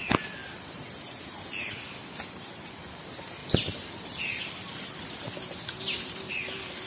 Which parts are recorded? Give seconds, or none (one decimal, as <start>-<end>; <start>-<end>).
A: 0.0-3.4; 6.3-6.9